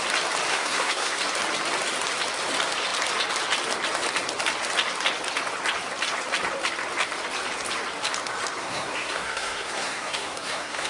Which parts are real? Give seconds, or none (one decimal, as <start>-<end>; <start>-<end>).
0.0-0.5; 1.2-8.6